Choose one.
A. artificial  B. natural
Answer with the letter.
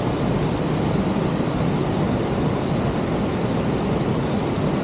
B